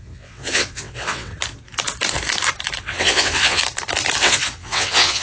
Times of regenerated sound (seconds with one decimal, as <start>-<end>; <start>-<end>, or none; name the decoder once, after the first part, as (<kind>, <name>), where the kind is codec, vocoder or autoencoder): 0.0-1.3 (vocoder, WaveNeXt); 2.8-3.6; 4.2-5.2